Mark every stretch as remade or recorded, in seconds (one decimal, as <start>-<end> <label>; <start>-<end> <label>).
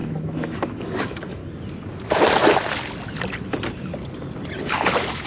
0.0-1.4 remade; 1.4-4.6 recorded; 4.6-5.3 remade